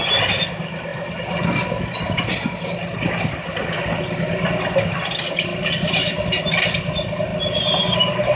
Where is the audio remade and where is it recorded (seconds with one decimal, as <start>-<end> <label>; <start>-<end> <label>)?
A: 0.0-8.4 recorded